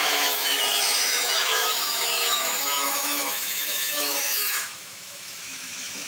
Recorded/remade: remade